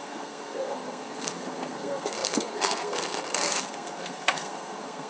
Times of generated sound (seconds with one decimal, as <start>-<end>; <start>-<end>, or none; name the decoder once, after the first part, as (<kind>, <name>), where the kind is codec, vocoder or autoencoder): 0.0-5.1 (codec, SNAC)